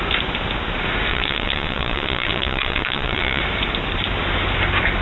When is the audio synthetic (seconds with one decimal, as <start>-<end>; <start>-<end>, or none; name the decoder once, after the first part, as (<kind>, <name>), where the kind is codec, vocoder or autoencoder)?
1.1-3.4 (vocoder, WaveNeXt)